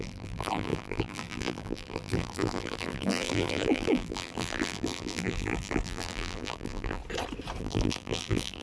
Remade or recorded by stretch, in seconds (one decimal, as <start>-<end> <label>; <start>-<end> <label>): 0.0-7.0 remade; 7.0-7.6 recorded; 7.6-8.6 remade